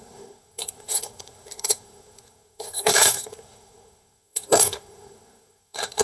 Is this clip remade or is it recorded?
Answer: remade